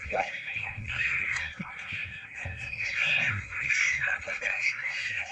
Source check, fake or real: fake